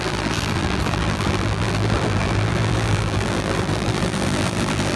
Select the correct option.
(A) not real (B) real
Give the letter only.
A